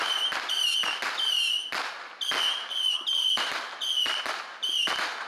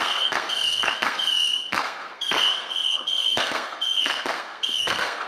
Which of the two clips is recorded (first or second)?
first